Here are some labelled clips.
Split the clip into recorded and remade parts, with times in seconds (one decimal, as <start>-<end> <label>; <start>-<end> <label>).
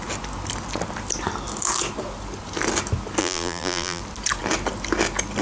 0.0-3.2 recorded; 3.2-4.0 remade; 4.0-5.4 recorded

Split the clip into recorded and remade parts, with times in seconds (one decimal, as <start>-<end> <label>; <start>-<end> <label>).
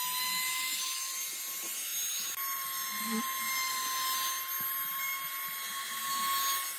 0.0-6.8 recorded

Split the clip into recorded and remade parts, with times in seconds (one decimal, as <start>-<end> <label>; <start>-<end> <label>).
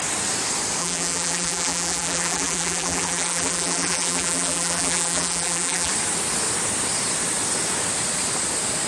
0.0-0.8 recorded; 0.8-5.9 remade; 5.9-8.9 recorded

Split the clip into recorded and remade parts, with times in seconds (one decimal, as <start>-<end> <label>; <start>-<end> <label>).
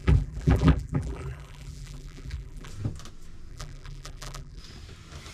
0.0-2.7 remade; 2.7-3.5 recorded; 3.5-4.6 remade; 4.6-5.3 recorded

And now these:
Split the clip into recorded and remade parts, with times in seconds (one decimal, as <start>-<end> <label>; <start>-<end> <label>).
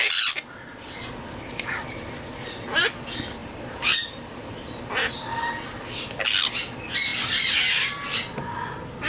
0.0-3.4 recorded; 3.4-4.8 remade; 4.8-9.1 recorded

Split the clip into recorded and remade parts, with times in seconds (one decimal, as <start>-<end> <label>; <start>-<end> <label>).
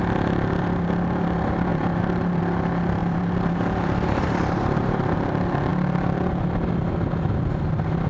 0.0-1.7 recorded; 1.7-2.4 remade; 2.4-3.0 recorded; 3.0-5.3 remade; 5.3-8.1 recorded